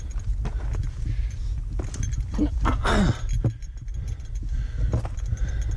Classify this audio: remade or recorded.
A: recorded